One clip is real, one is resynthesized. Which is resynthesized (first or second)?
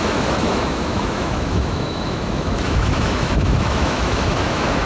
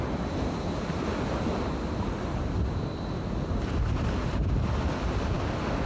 first